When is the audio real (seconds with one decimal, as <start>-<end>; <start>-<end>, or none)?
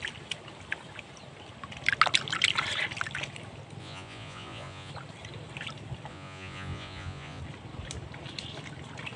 0.0-3.8; 4.9-6.1; 7.4-9.2